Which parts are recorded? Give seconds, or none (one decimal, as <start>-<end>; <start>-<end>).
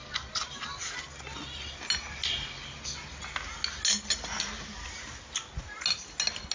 0.0-6.5